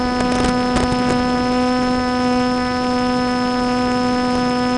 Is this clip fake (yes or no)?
no